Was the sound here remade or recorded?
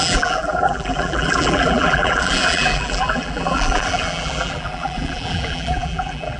remade